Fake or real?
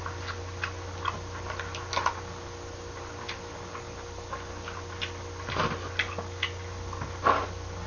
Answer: real